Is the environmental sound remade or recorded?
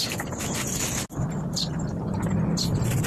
recorded